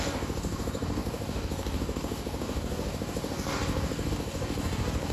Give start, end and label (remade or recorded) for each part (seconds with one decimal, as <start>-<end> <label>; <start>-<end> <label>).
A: 0.0-5.1 remade